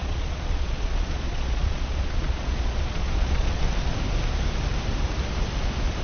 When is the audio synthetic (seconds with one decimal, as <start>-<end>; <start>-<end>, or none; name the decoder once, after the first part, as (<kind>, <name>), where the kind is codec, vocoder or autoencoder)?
0.0-3.6 (vocoder, Vocos)